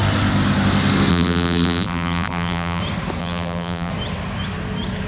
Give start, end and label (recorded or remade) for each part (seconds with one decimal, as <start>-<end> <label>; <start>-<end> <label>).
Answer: 0.0-1.1 recorded; 1.1-2.8 remade; 2.8-3.2 recorded; 3.2-3.9 remade; 3.9-5.1 recorded